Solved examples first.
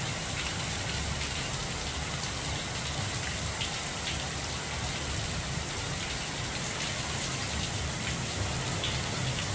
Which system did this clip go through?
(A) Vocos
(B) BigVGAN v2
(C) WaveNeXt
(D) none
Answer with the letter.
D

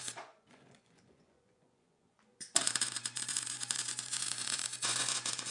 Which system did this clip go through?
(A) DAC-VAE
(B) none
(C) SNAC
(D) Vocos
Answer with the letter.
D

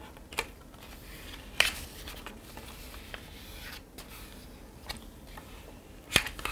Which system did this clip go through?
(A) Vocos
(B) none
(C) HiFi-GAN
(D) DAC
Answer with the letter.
B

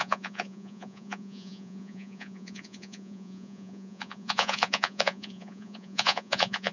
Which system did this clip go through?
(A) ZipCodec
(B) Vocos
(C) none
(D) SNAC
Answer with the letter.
B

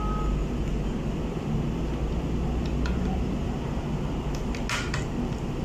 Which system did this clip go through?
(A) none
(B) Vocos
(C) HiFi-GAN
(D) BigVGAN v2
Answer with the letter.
A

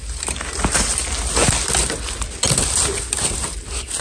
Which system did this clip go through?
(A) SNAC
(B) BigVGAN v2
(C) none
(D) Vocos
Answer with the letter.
C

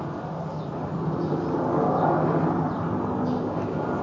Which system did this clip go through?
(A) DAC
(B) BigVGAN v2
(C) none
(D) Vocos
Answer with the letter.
C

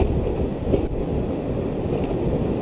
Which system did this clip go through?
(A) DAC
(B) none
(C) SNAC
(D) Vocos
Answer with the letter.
B